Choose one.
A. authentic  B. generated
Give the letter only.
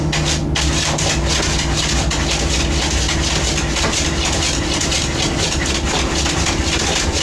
A